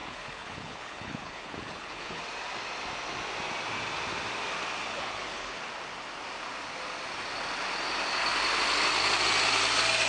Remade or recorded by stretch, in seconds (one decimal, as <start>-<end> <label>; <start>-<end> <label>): 0.0-2.2 remade; 2.2-4.9 recorded; 4.9-5.6 remade; 5.6-10.1 recorded